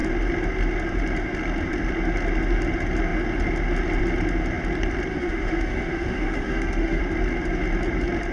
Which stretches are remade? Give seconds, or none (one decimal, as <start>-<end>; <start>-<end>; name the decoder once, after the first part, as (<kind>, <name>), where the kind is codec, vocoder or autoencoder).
5.1-7.0 (autoencoder, DAC-VAE)